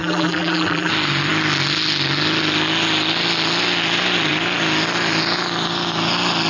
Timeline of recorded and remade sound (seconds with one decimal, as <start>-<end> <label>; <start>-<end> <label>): 0.0-0.9 remade; 0.9-6.5 recorded